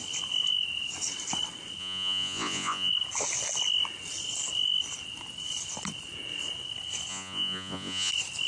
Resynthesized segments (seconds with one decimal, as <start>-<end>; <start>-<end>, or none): 1.8-2.9; 7.1-8.1